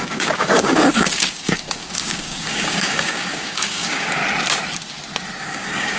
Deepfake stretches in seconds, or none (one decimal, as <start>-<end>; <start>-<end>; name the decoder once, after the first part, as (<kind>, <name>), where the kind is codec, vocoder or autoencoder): 0.0-4.2 (codec, DAC); 5.4-6.0

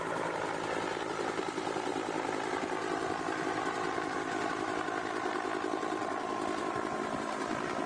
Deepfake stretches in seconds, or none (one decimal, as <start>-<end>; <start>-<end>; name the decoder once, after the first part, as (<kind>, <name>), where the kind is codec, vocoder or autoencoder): 0.0-1.9 (vocoder, BigVGAN v2); 6.6-7.9

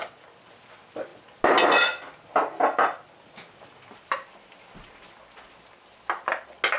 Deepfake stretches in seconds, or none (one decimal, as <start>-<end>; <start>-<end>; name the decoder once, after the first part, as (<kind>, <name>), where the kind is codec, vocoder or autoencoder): none

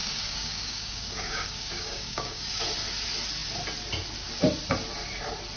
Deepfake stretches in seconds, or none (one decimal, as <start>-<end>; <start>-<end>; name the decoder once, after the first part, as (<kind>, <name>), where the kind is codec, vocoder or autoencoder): 0.0-2.6 (codec, DAC)